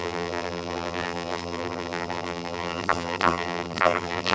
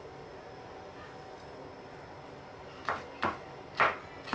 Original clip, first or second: second